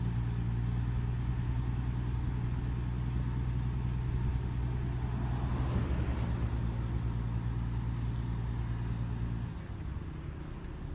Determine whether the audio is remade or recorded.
recorded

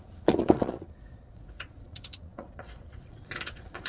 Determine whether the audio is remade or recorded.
remade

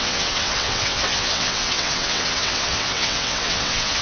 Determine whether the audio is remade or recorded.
remade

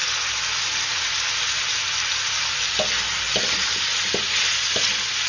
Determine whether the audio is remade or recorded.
recorded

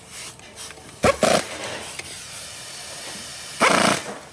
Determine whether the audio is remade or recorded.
recorded